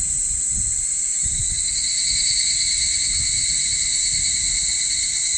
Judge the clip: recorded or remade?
recorded